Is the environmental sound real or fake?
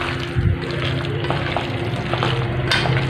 real